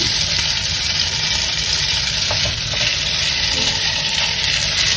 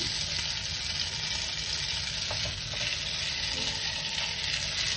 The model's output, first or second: first